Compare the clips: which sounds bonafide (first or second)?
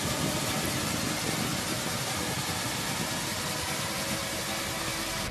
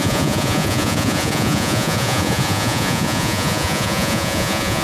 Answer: first